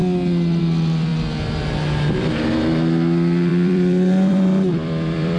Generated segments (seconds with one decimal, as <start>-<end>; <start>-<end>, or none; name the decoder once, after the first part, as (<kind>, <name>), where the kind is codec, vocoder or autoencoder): 3.5-5.4 (vocoder, BigVGAN v2)